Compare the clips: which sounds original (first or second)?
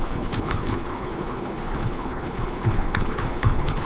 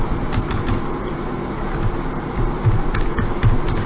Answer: second